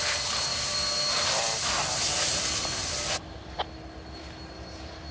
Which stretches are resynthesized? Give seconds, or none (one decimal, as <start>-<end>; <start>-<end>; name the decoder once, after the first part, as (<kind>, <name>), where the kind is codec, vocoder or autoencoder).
0.5-3.6 (vocoder, BigVGAN v2)